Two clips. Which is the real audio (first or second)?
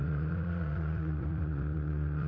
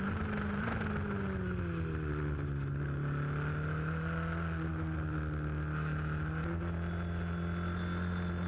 second